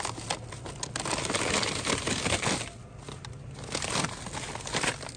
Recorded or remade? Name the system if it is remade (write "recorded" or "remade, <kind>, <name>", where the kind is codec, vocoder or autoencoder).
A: recorded